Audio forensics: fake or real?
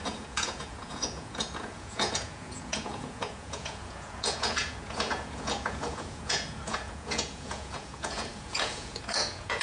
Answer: fake